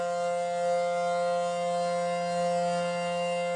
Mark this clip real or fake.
real